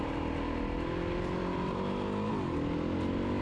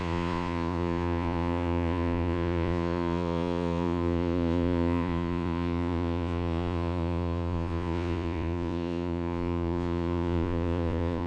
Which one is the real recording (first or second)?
first